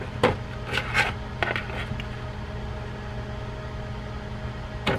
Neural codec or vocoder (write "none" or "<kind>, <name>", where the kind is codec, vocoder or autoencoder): none